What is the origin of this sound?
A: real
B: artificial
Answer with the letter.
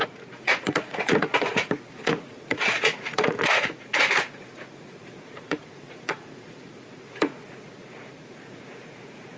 B